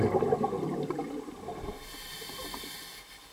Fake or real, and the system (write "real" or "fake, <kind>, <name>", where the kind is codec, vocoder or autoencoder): real